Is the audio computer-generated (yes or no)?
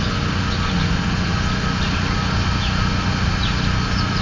no